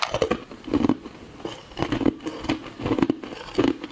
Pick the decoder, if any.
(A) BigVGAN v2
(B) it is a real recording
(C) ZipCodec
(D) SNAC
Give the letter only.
B